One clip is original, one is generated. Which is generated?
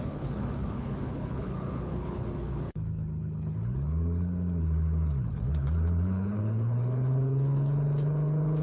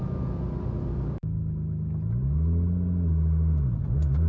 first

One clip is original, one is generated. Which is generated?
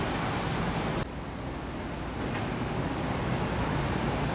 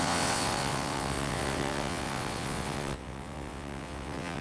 second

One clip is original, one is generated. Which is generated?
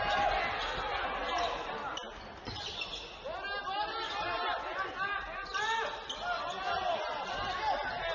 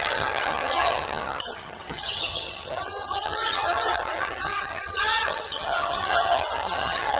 second